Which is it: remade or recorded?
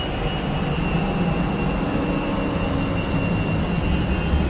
recorded